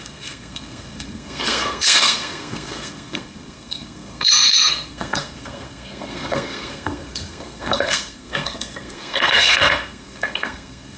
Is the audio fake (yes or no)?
yes